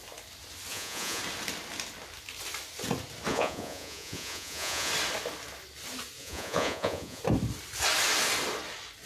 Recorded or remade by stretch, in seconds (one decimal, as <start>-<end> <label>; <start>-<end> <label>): 0.0-0.7 recorded; 0.7-1.2 remade; 1.2-3.3 recorded; 3.3-4.9 remade; 4.9-6.2 recorded; 6.2-7.2 remade; 7.2-9.1 recorded